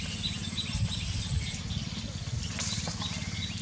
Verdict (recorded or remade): recorded